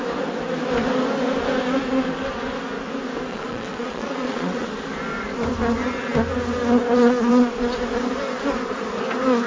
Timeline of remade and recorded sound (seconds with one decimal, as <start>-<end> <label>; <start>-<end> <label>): 0.0-3.3 recorded; 3.3-4.7 remade; 4.7-9.5 recorded